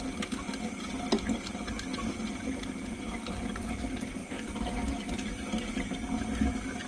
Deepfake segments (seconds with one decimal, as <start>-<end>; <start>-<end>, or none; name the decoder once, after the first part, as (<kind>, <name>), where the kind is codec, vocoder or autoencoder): none